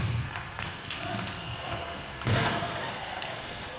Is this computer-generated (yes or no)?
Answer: yes